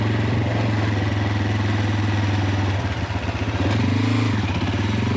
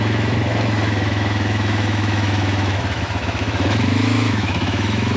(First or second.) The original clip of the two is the first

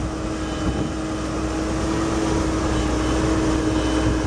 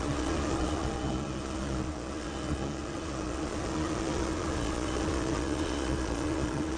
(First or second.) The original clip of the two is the first